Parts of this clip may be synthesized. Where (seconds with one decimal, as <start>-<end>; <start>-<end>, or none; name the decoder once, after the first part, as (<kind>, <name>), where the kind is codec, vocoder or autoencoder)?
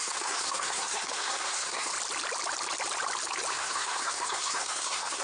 0.0-1.9 (codec, SNAC); 3.5-5.2